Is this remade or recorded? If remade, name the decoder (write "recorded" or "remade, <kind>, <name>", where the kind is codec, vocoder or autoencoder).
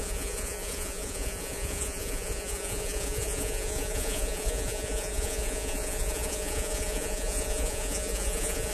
remade, vocoder, Vocos